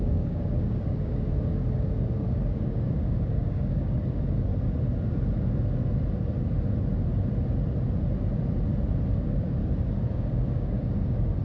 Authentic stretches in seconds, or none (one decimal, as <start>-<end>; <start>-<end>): 4.5-9.2; 9.6-10.1